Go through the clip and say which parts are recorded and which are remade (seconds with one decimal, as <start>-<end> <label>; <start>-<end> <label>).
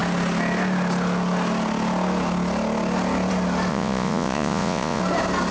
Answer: 0.0-3.7 recorded; 3.7-5.0 remade; 5.0-5.5 recorded